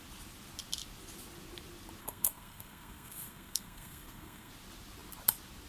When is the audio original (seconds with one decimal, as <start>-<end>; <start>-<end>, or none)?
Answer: 0.0-2.0; 4.5-5.7

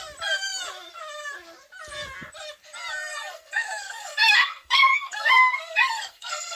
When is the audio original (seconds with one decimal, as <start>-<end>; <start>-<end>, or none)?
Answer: 0.0-3.1

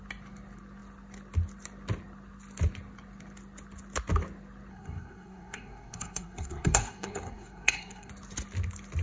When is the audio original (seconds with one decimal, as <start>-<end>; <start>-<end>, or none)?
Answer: 0.0-4.7; 8.1-9.0

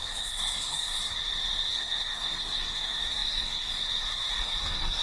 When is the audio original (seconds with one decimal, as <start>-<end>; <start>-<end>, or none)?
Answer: 1.2-1.7

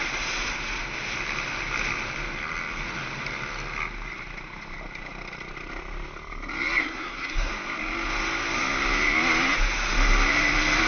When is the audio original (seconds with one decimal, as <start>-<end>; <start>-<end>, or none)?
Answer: 0.0-6.8; 7.5-10.9

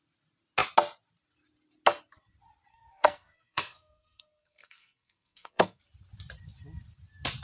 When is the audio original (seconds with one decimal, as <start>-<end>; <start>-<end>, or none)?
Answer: 0.0-2.7; 5.8-7.4

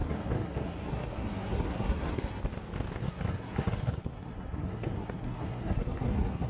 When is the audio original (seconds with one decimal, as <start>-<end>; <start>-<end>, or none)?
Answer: 2.4-3.0